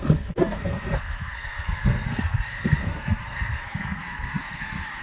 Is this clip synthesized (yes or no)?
yes